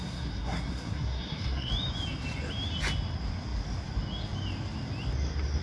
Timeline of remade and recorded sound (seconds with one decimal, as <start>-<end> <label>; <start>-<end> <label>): 0.0-1.7 remade; 1.7-5.6 recorded